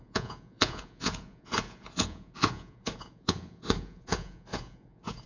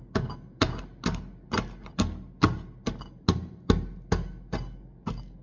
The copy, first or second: first